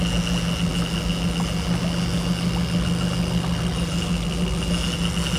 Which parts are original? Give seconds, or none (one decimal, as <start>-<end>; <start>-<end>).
0.0-5.4